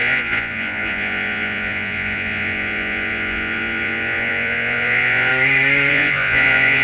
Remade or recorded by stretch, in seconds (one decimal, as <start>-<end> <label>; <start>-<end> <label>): 0.0-5.3 remade; 5.3-5.9 recorded; 5.9-6.8 remade